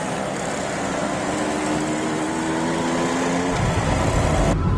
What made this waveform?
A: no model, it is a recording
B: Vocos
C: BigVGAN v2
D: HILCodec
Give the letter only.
A